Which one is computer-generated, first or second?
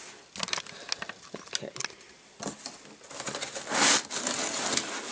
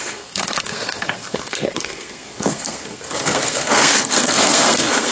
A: second